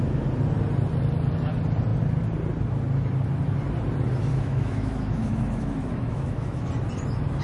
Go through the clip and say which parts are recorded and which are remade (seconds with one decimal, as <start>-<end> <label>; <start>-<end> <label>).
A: 0.0-4.3 recorded; 4.3-6.7 remade; 6.7-7.4 recorded